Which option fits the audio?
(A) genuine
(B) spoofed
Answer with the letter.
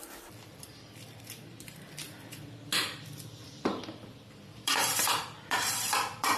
B